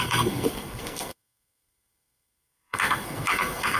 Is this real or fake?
fake